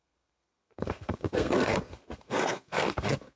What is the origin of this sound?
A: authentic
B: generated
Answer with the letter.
B